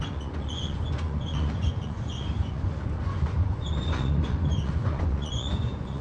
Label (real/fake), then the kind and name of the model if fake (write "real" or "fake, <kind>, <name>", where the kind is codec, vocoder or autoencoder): fake, vocoder, Vocos